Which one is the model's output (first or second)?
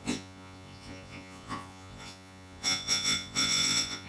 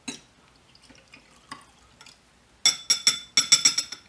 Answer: first